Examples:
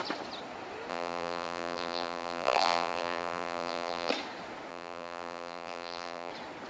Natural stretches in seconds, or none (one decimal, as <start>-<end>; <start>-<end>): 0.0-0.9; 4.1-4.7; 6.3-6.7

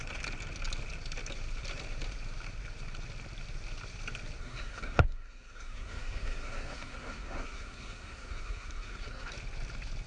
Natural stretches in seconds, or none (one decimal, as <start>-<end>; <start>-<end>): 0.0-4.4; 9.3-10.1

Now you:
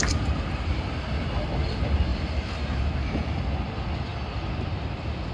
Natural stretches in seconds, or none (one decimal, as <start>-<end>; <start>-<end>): 0.7-2.1; 2.8-5.3